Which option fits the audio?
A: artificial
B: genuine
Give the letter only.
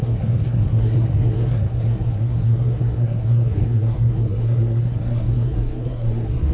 A